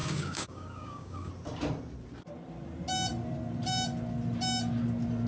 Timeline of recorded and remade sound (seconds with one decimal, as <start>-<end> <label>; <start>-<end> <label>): 0.0-1.3 remade; 1.3-5.3 recorded